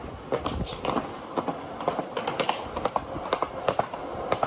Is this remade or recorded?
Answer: recorded